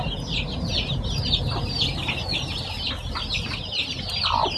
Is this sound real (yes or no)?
yes